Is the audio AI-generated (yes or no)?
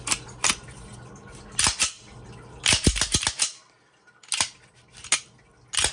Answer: no